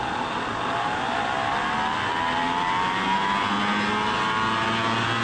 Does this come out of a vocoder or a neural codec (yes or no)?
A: no